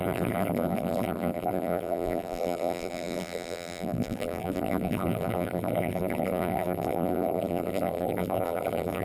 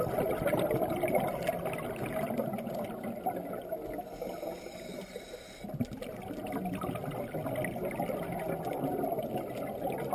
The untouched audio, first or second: second